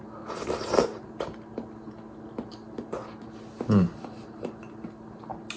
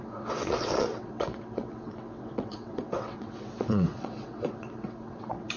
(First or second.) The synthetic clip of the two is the second